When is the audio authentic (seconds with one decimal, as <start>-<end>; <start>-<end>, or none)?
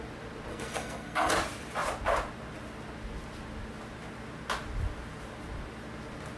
0.0-0.5; 1.3-6.4